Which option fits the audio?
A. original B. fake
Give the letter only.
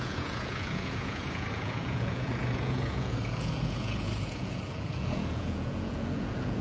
B